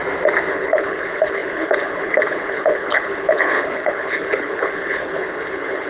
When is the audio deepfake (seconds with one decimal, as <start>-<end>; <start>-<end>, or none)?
0.5-5.9